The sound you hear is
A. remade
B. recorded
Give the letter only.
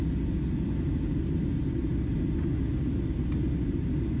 B